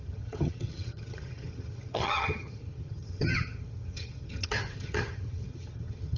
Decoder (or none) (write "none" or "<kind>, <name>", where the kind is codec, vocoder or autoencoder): vocoder, HiFi-GAN